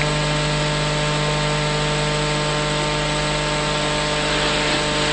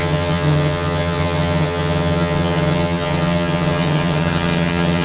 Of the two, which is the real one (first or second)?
first